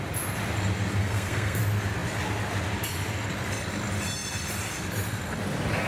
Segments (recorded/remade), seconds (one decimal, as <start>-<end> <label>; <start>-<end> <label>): 0.0-1.0 recorded; 1.0-1.6 remade; 1.6-5.9 recorded